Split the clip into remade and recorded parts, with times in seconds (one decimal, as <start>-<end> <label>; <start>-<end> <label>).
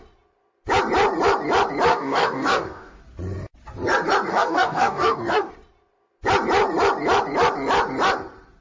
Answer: 0.0-1.9 recorded; 1.9-3.0 remade; 3.0-4.3 recorded; 4.3-5.5 remade; 5.5-8.6 recorded